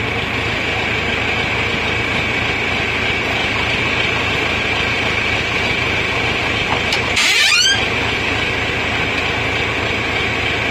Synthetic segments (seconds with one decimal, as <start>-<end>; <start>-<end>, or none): 3.4-8.5